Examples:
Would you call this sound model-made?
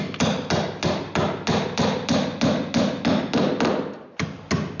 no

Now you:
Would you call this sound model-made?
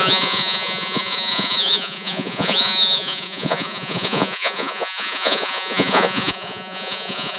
yes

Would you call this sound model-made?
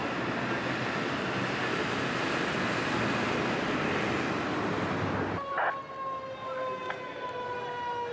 no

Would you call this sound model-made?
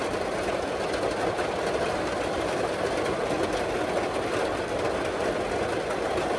no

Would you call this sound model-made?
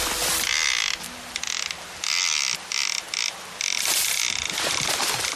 no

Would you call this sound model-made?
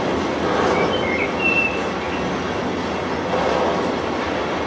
no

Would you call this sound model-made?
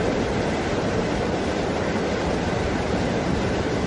yes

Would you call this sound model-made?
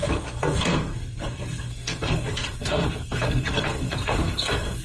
yes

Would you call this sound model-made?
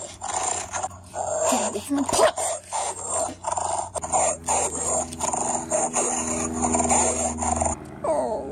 no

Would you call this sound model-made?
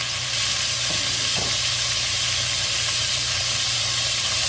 yes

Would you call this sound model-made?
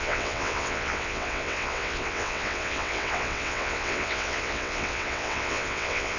yes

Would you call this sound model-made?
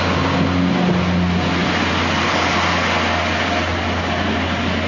no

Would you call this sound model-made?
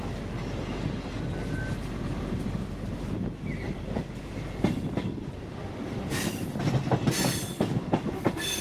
no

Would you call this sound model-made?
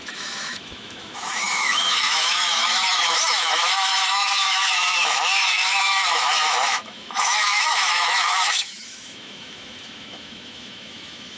yes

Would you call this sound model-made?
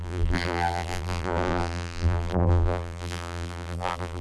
yes